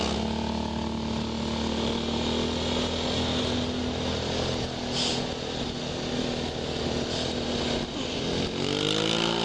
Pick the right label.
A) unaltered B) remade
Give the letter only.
A